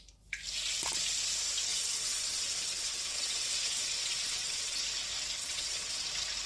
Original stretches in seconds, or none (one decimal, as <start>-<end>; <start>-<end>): 0.0-1.7; 4.8-5.4; 6.1-6.5